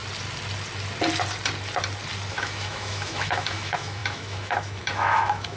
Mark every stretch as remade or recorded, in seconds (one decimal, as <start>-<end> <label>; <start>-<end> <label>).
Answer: 0.0-2.3 recorded; 2.3-5.6 remade